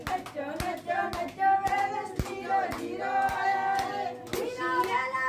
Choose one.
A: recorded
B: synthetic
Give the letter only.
A